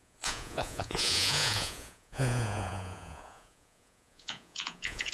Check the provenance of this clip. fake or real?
fake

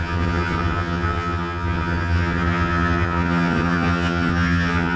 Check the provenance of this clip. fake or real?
fake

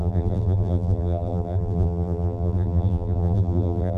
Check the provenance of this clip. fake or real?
fake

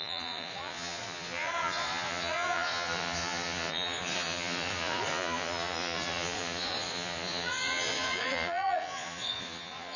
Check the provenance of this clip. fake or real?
fake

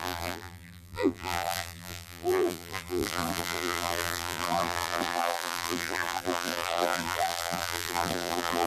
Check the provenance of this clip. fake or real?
fake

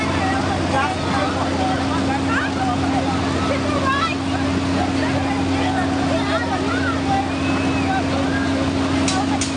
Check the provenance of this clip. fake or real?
real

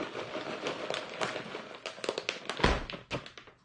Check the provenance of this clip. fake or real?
real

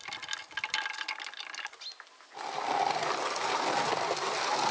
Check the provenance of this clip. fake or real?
real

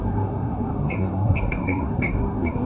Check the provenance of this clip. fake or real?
fake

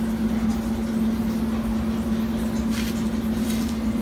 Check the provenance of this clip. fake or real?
real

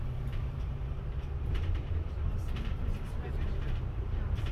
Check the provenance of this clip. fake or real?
fake